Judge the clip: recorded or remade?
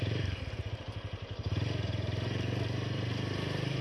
remade